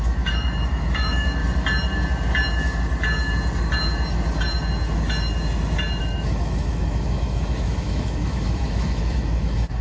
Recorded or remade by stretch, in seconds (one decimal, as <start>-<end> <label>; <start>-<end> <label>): 0.0-1.4 remade; 1.4-6.0 recorded; 6.0-9.8 remade